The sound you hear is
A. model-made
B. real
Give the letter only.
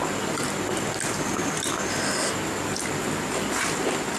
B